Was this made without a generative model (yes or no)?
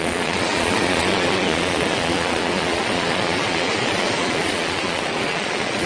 no